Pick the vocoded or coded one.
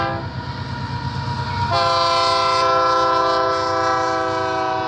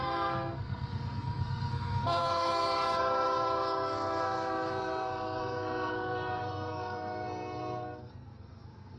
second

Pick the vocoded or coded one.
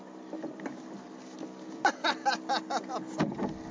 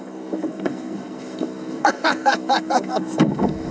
second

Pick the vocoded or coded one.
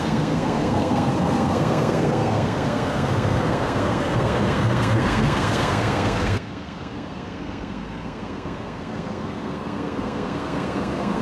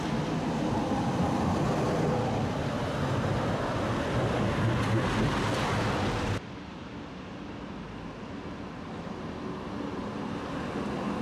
first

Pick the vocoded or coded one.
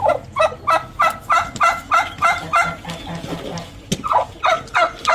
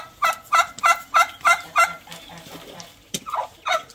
second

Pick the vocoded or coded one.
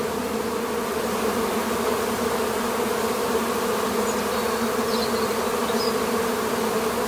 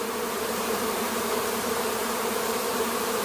second